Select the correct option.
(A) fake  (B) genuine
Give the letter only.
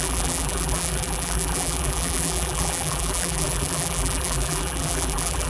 A